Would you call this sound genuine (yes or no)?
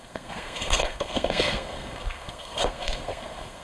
no